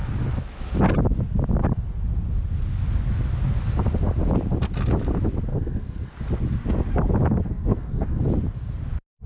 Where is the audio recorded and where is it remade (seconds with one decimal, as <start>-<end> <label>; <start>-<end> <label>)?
0.0-5.5 recorded; 5.5-6.1 remade; 6.1-7.7 recorded; 7.7-8.2 remade; 8.2-9.3 recorded